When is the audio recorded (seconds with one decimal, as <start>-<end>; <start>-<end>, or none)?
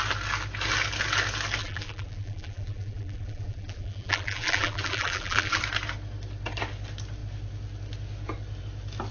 0.0-1.6; 5.6-9.1